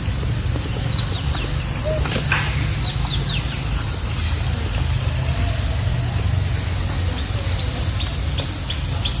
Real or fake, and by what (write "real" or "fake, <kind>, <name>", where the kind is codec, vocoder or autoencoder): real